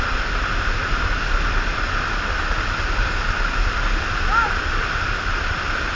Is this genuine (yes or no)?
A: yes